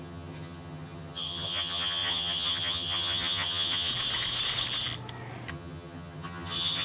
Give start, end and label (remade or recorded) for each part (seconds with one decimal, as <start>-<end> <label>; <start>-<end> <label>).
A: 0.0-3.9 remade; 3.9-5.5 recorded; 5.5-6.8 remade